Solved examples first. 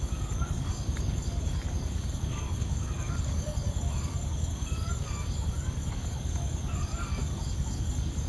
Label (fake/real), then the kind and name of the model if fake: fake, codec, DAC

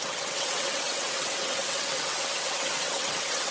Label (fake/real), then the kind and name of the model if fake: fake, vocoder, WaveNeXt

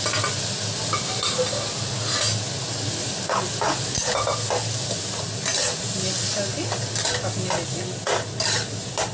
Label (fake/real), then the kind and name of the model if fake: real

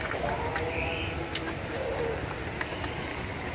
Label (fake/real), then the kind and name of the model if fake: real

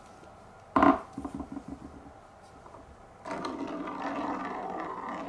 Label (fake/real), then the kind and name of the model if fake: real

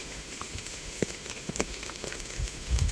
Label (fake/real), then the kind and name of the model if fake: fake, autoencoder, DAC-VAE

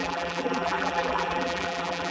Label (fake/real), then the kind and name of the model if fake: fake, vocoder, BigVGAN v2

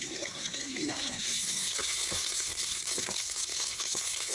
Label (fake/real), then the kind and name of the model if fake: fake, codec, SNAC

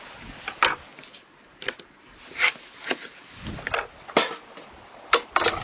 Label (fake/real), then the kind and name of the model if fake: real